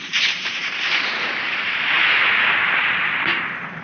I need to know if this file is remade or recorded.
remade